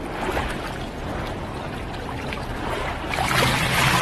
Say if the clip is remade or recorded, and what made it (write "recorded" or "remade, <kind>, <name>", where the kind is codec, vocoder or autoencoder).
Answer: recorded